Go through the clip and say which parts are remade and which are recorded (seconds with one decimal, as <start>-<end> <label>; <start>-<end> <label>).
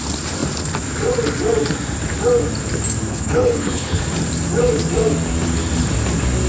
0.0-3.1 recorded; 3.1-4.0 remade; 4.0-6.5 recorded